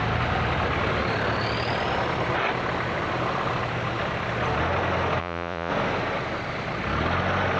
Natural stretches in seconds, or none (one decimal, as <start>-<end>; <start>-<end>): 0.0-5.2; 5.7-7.6